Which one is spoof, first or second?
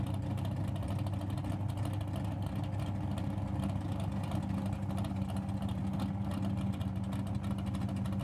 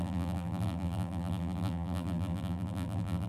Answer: second